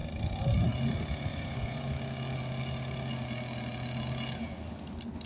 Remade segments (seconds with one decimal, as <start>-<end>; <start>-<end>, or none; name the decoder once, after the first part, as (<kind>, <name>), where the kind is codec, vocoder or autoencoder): 1.3-1.8 (vocoder, Vocos)